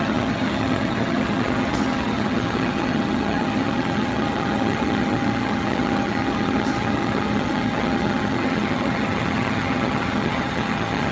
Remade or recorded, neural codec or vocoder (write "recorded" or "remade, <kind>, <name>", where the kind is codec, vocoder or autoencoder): remade, vocoder, HiFi-GAN